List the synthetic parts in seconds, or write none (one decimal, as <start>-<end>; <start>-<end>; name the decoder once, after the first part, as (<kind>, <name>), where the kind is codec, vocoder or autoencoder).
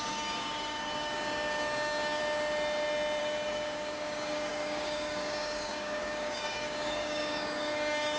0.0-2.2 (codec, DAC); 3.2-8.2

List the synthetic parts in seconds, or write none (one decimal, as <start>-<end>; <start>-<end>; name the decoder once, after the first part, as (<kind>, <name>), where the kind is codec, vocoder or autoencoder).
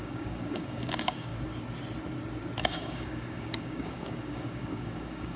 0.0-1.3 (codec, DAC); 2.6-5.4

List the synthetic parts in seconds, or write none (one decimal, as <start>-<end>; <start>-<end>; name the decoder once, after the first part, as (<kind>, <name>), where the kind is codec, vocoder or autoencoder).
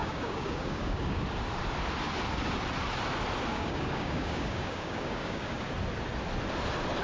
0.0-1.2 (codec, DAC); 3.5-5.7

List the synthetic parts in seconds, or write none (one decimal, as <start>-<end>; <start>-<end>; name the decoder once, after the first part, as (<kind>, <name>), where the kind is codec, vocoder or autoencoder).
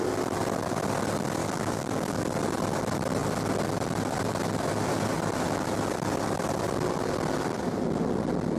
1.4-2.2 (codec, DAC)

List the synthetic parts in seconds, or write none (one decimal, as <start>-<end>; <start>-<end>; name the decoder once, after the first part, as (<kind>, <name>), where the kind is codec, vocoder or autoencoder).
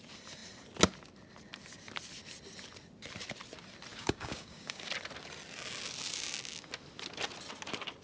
3.9-4.9 (codec, DAC)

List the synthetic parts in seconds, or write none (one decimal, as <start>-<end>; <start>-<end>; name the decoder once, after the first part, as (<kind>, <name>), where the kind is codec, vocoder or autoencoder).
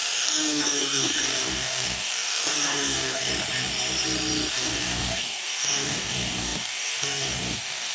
0.0-3.3 (codec, DAC); 4.5-7.9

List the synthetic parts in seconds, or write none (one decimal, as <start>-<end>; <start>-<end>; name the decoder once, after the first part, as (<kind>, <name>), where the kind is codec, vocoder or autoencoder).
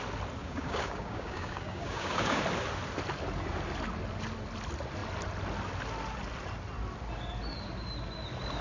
0.4-2.4 (codec, DAC)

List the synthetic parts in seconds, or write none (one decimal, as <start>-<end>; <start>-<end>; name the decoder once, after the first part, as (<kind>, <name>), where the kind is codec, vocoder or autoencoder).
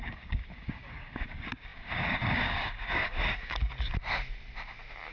0.0-3.6 (codec, DAC)